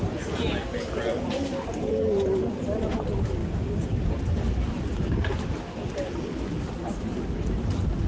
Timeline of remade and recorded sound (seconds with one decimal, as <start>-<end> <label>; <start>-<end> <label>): 0.0-3.4 recorded; 3.4-4.1 remade; 4.1-8.1 recorded